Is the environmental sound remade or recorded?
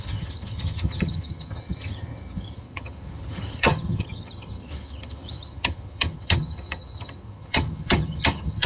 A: remade